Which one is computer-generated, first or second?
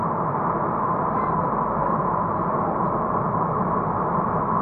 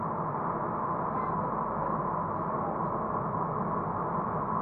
first